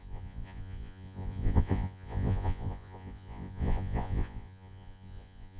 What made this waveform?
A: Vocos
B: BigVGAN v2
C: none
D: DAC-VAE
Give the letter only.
A